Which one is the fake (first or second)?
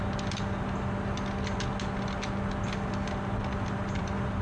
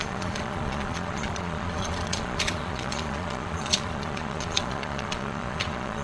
second